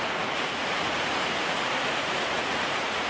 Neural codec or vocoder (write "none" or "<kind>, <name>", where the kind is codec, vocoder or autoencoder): vocoder, Vocos